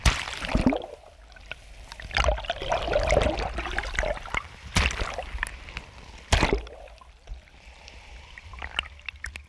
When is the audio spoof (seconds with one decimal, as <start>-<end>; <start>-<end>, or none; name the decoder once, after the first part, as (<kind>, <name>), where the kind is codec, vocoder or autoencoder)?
none